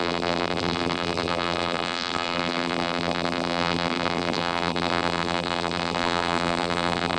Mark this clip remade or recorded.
remade